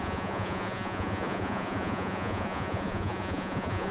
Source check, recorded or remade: remade